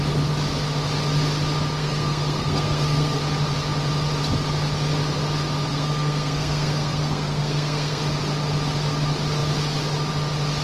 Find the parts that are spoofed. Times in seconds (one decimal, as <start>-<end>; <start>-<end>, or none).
1.8-3.2; 5.7-8.0